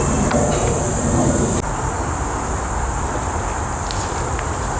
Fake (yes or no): no